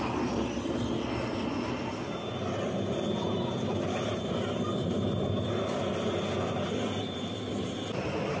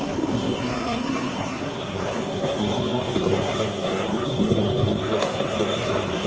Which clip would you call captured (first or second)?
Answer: first